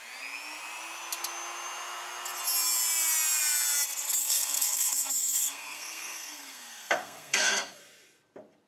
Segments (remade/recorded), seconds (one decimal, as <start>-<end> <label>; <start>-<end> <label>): 0.0-4.2 recorded; 4.2-7.8 remade; 7.8-8.7 recorded